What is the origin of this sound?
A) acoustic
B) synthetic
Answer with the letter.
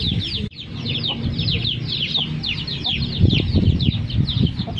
A